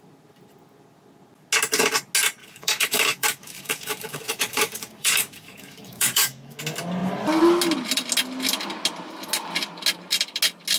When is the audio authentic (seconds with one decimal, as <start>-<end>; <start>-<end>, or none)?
0.0-2.4; 6.6-10.8